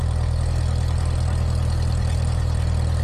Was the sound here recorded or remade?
recorded